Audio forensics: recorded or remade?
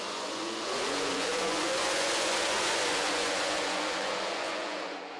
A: remade